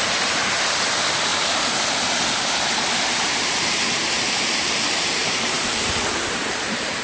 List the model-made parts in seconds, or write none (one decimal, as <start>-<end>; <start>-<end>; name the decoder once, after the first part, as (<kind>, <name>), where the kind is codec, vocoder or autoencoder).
0.0-1.3 (vocoder, BigVGAN v2); 2.9-7.0